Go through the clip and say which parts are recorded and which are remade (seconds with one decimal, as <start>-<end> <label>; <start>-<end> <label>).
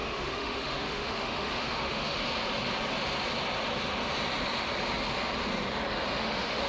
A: 0.0-2.2 remade; 2.2-6.2 recorded; 6.2-6.7 remade